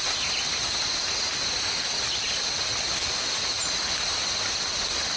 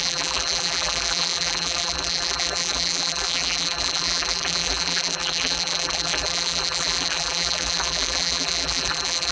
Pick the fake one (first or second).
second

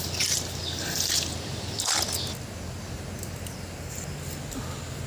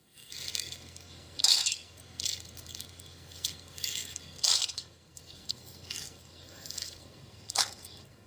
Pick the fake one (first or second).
second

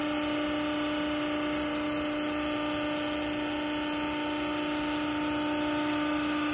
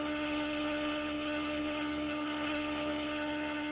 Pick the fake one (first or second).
second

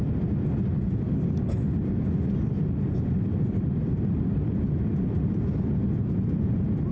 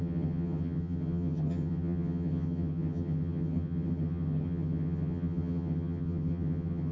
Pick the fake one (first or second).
second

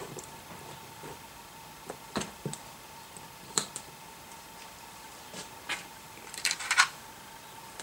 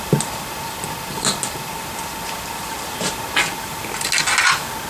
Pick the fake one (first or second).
first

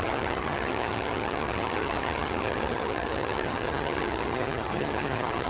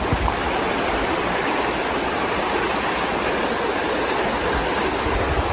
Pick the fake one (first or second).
first